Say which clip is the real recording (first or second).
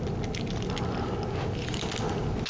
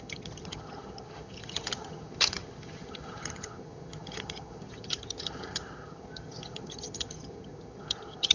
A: first